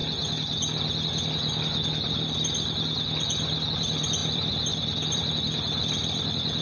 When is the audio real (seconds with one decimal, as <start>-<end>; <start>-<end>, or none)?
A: 0.0-3.7